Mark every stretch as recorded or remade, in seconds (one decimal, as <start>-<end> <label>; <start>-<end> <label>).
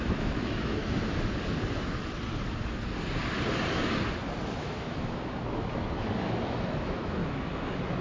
0.0-0.8 remade; 0.8-4.6 recorded; 4.6-8.0 remade